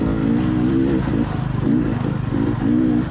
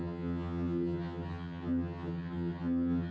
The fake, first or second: second